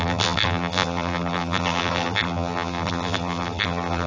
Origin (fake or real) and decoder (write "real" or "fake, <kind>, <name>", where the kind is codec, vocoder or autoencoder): fake, vocoder, BigVGAN v2